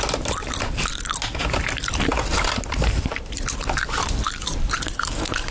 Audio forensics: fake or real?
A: real